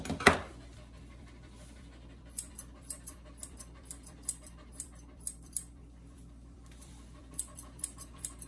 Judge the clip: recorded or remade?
remade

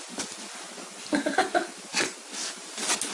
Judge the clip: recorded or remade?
recorded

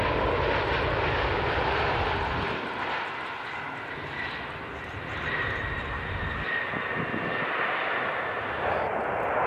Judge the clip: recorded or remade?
recorded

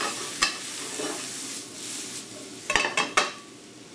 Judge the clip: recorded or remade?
recorded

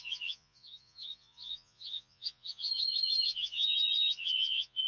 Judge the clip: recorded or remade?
remade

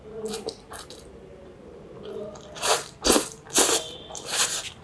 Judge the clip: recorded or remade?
recorded